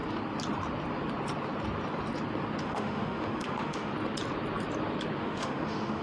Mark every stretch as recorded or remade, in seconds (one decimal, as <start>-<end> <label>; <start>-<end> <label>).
0.0-2.6 recorded; 2.6-3.9 remade; 3.9-5.2 recorded; 5.2-6.0 remade